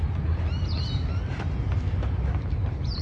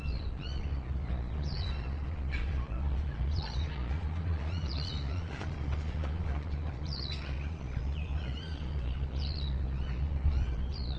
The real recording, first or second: first